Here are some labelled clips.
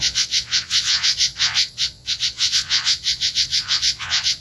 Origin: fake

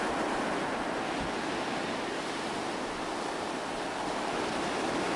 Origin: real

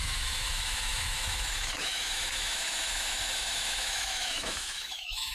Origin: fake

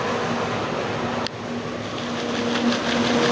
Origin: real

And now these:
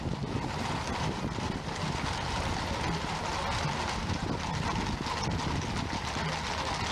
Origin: real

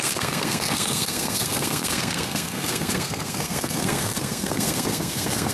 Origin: fake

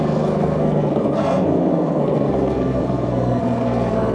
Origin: fake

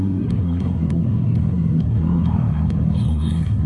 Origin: fake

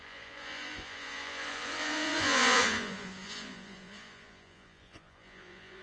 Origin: fake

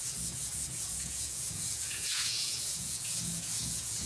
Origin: fake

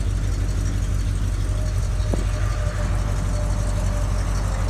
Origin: real